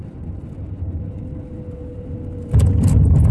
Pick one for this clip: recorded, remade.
recorded